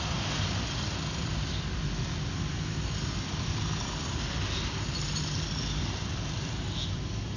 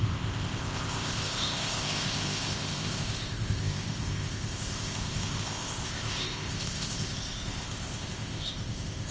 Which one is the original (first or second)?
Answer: first